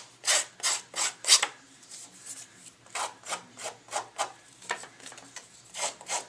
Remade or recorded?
remade